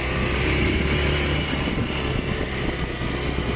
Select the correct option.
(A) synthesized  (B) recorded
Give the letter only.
B